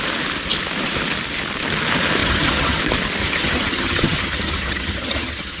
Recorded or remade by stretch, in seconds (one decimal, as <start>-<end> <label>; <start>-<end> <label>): 0.0-2.2 recorded; 2.2-2.8 remade; 2.8-3.2 recorded; 3.2-5.6 remade